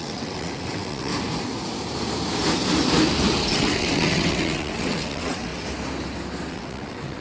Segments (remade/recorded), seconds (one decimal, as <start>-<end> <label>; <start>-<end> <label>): 0.0-1.1 remade; 1.1-3.5 recorded; 3.5-5.5 remade; 5.5-6.5 recorded; 6.5-7.2 remade